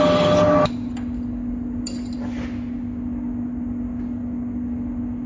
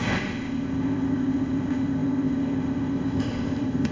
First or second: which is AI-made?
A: second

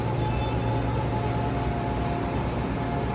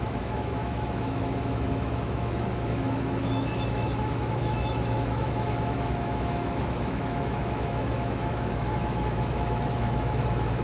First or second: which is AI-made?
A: second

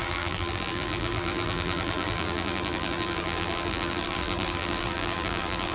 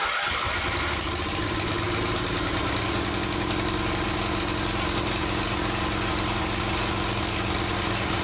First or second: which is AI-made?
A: first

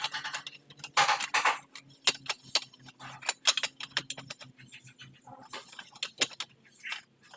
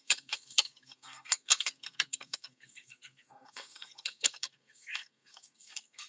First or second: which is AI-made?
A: second